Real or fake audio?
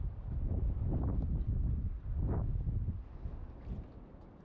real